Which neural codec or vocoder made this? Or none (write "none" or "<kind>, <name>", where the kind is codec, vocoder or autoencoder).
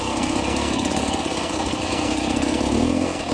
codec, SNAC